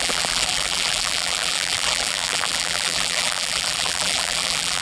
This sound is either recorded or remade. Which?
remade